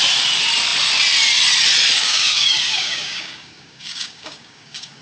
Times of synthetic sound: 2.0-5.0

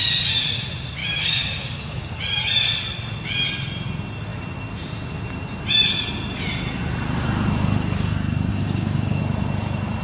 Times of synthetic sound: 1.0-2.2; 8.5-9.2

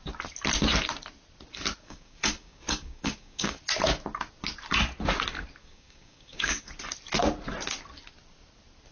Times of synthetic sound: 1.8-3.6; 5.6-6.7

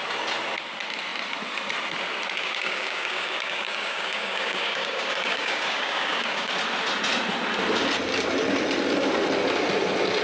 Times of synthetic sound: 2.4-6.5